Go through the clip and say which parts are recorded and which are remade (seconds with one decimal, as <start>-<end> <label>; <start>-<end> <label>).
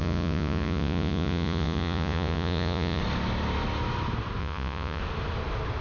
0.0-3.0 remade; 3.0-4.4 recorded; 4.4-5.0 remade; 5.0-5.8 recorded